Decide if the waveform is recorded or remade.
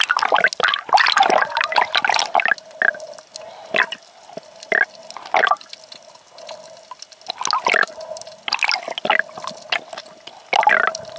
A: recorded